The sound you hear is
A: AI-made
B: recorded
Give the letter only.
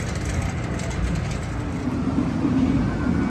B